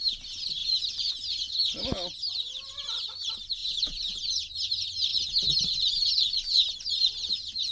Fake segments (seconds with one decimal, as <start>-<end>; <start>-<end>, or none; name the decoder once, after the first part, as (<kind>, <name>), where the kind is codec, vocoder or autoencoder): 0.6-1.1 (vocoder, Vocos); 3.6-4.2